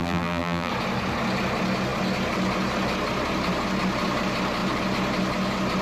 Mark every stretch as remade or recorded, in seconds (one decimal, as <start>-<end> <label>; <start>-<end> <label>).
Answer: 0.0-0.7 remade; 0.7-5.8 recorded